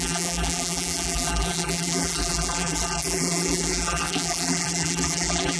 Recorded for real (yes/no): no